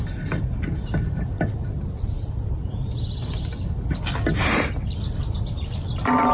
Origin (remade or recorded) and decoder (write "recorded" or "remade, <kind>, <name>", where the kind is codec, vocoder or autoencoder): recorded